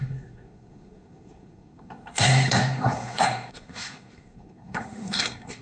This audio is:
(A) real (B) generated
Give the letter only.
B